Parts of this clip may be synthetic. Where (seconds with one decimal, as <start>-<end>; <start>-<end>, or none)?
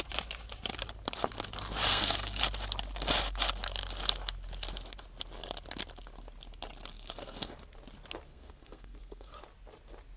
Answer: 1.9-2.4; 6.9-7.5; 8.3-9.3